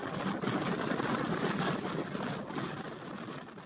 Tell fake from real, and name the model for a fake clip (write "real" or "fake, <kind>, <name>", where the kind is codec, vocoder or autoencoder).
real